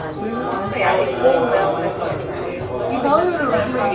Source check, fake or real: real